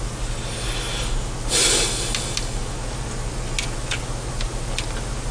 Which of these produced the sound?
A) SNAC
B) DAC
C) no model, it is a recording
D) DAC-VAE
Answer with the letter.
C